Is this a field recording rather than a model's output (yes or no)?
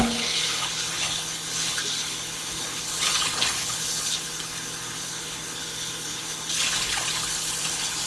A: no